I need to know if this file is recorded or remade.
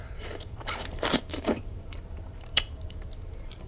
remade